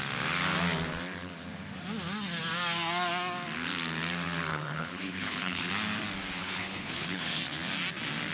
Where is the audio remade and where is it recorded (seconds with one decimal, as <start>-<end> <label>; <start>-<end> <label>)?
0.0-4.5 recorded; 4.5-5.7 remade; 5.7-6.4 recorded; 6.4-7.4 remade; 7.4-8.3 recorded